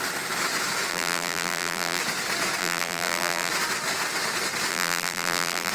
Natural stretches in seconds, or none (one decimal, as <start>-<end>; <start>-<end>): 0.0-0.9; 2.0-2.6; 3.5-4.7